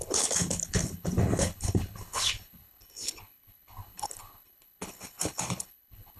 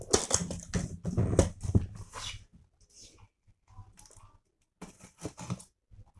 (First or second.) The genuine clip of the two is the second